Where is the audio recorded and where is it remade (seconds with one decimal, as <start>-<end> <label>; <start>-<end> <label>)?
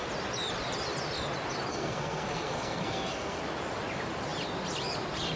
0.0-1.7 recorded; 1.7-3.4 remade; 3.4-5.4 recorded